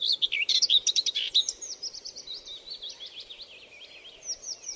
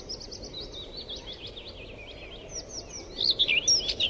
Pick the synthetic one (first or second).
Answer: first